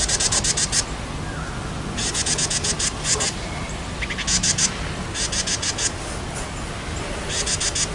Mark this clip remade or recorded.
recorded